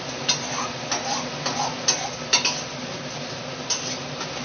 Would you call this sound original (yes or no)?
yes